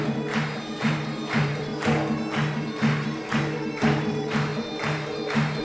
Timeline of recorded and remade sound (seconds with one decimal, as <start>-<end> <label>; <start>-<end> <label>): 0.0-1.7 remade; 1.7-2.5 recorded; 2.5-5.6 remade